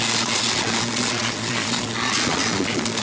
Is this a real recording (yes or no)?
no